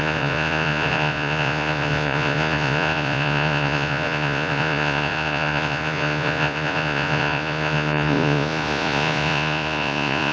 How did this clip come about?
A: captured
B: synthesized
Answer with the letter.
B